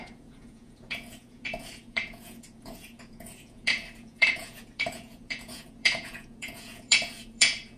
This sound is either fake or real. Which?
fake